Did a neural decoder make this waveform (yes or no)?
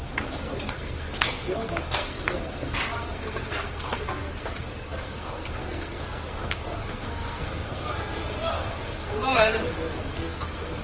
yes